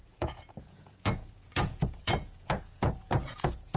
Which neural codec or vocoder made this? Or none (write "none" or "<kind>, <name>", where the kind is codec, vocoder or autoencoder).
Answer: vocoder, Vocos